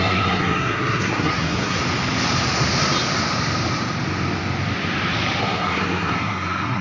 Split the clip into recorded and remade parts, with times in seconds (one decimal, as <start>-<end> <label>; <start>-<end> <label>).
0.0-1.8 remade; 1.8-5.4 recorded; 5.4-6.8 remade